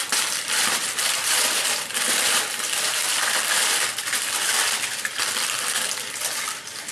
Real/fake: fake